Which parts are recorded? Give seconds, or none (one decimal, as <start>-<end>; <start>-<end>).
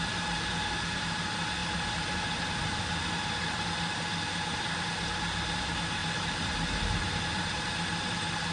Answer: 0.0-6.0; 7.2-8.5